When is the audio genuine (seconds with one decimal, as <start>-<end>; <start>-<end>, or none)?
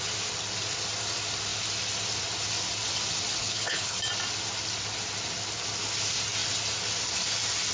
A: 0.0-3.4; 4.0-7.7